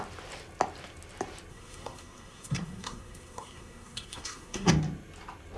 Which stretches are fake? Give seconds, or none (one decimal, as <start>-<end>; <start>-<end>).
1.5-4.7